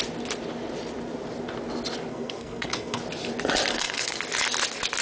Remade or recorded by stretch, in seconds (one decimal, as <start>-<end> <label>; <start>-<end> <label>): 0.0-2.1 recorded; 2.1-3.0 remade; 3.0-3.7 recorded; 3.7-4.2 remade; 4.2-5.0 recorded